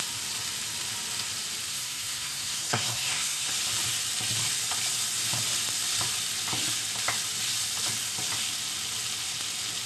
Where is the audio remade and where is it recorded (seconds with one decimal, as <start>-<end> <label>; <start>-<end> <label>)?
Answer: 0.0-1.7 recorded; 1.7-3.5 remade; 3.5-9.9 recorded